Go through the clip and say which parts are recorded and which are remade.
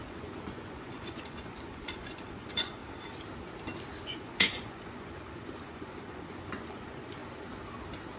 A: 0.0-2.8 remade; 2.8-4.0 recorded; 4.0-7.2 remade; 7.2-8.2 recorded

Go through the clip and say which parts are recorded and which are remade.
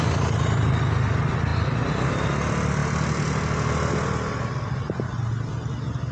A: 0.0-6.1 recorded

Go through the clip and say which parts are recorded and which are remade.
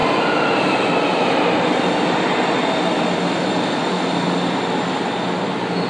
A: 0.0-5.9 recorded